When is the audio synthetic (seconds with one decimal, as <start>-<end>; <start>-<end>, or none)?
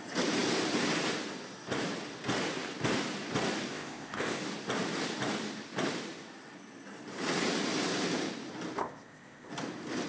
3.7-4.4; 8.8-9.5